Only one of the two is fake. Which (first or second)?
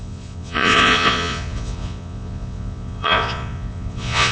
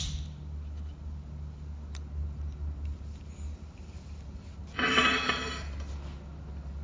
first